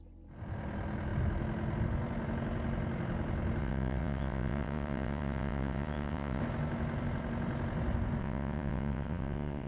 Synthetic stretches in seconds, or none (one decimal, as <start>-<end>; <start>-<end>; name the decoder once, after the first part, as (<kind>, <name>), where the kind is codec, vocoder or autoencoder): 3.6-6.4 (vocoder, WaveNeXt); 8.2-9.7